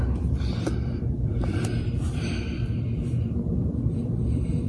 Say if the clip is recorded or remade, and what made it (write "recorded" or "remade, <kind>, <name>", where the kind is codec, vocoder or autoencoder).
remade, vocoder, BigVGAN v2